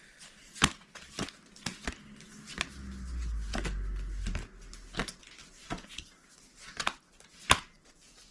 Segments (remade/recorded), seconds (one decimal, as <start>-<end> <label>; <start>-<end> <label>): 0.0-8.3 recorded